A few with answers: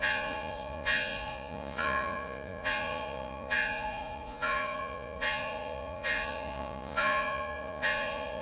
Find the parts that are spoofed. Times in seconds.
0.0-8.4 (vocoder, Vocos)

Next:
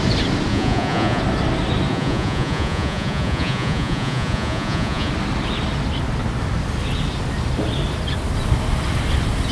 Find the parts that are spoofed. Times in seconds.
0.5-1.2 (vocoder, Vocos); 1.9-5.1

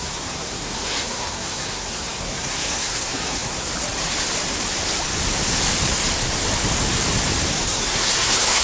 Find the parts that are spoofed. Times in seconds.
0.0-3.7 (codec, SNAC); 7.5-8.6

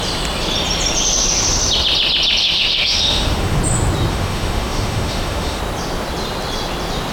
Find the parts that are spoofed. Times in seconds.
2.4-3.6 (autoencoder, DAC-VAE); 4.1-5.6

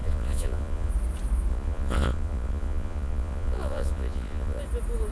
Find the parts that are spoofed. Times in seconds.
0.0-0.9 (vocoder, Vocos); 1.5-4.6

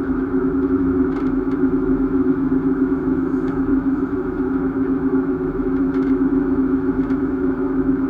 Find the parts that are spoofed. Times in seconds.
0.0-8.1 (autoencoder, DAC-VAE)

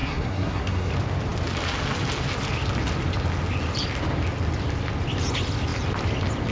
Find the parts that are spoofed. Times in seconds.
0.0-0.9 (codec, SNAC)